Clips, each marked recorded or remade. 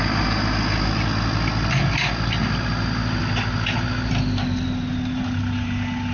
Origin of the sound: recorded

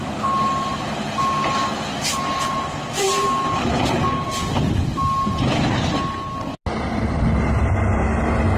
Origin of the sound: recorded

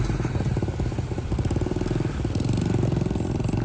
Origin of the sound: recorded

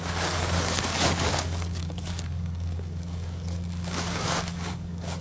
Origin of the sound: remade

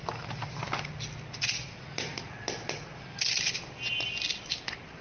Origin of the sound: recorded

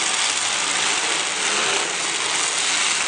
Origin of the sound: recorded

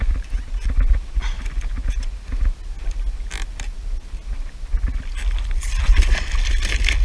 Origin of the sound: recorded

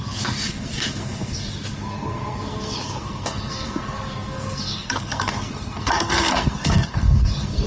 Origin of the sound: remade